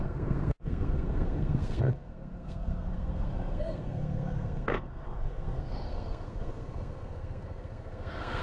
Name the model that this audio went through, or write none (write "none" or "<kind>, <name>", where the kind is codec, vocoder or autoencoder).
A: codec, SNAC